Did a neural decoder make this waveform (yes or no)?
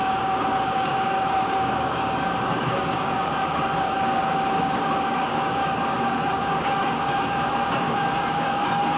yes